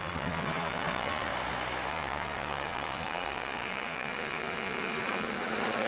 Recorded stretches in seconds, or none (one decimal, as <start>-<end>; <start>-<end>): 1.3-1.9